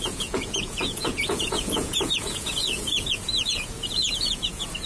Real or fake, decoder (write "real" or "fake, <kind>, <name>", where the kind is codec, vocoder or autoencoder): fake, vocoder, Vocos